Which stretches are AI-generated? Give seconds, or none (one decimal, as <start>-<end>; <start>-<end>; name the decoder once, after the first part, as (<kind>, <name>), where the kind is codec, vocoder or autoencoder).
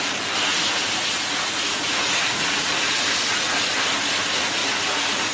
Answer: 0.5-3.7 (vocoder, Vocos); 4.6-5.3